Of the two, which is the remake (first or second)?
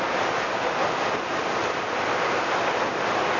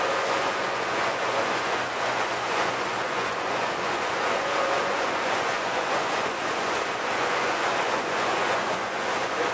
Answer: second